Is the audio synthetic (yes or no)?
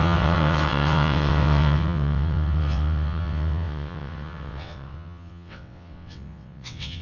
yes